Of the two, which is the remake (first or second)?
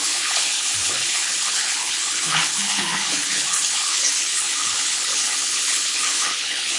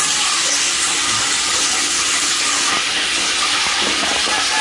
first